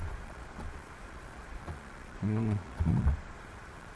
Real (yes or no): no